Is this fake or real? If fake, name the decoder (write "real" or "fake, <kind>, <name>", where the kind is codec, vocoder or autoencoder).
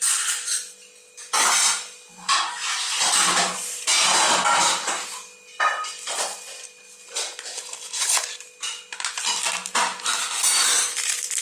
real